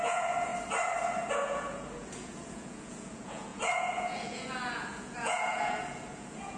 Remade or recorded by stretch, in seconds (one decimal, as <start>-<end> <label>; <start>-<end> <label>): 0.0-0.5 remade; 0.5-1.3 recorded; 1.3-6.6 remade